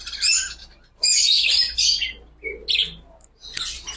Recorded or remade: recorded